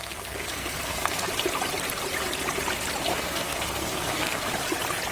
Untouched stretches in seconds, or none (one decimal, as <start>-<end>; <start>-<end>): 1.3-3.1; 4.5-5.1